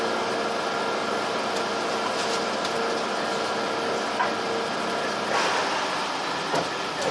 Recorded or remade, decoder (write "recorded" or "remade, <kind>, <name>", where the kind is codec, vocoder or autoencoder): recorded